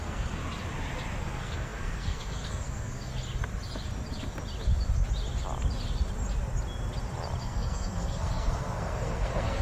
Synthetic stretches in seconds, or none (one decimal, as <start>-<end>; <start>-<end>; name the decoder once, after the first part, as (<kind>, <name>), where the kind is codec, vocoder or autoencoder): 0.0-0.4 (codec, SNAC); 1.2-3.1; 7.4-9.6